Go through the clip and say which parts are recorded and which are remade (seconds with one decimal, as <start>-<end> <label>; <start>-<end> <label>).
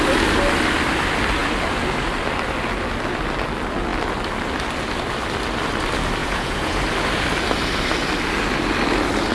0.0-6.2 recorded; 6.2-6.8 remade; 6.8-9.3 recorded